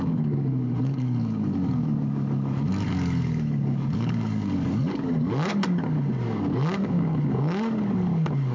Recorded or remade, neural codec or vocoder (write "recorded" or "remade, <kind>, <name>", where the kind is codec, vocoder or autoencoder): remade, codec, DAC